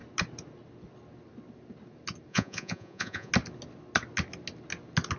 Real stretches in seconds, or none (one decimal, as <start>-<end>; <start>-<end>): 0.0-2.3; 3.3-5.2

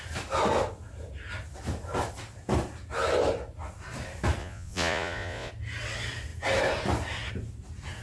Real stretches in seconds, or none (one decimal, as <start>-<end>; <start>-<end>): 0.0-4.4; 5.5-8.0